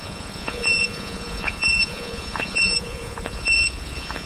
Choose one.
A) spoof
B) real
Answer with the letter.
A